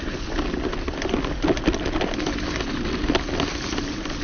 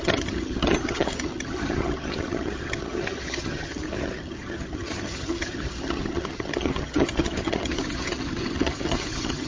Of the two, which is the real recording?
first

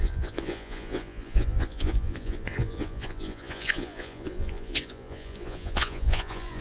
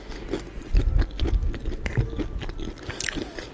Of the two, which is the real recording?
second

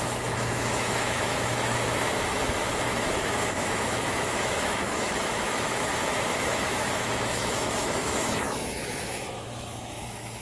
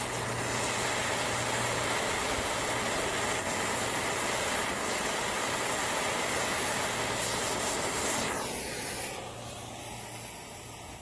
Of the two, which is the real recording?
second